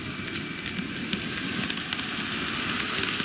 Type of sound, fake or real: real